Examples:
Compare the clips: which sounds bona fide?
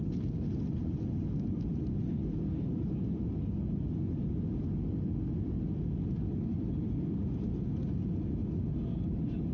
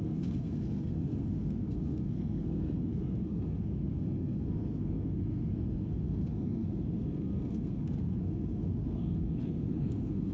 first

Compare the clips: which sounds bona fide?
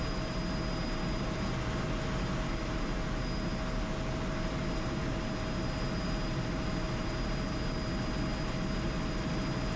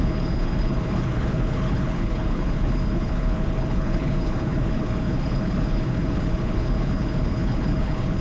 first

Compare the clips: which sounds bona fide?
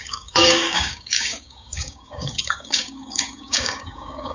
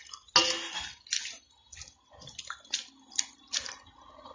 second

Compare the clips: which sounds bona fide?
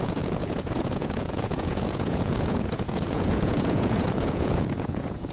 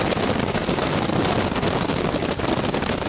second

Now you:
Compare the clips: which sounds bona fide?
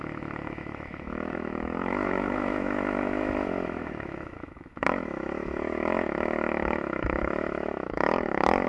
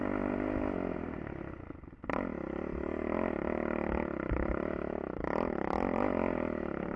second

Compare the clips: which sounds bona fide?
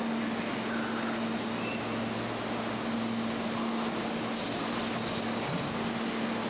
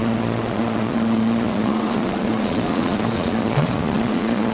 first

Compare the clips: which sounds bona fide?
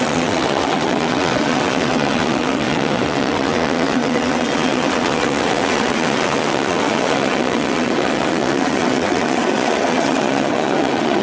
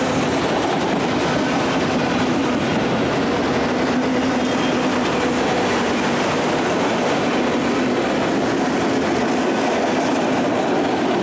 second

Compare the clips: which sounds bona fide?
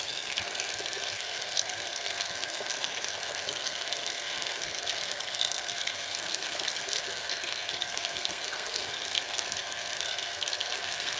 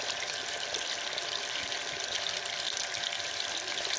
second